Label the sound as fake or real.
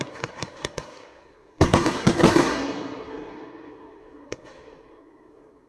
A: fake